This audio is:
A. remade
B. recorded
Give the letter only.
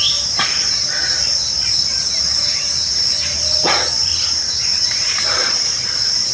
A